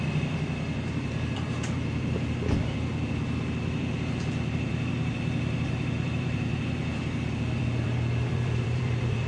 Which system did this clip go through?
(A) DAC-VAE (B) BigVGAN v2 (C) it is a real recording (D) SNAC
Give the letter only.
B